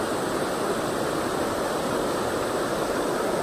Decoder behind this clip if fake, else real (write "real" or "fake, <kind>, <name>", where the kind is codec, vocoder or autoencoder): fake, vocoder, BigVGAN v2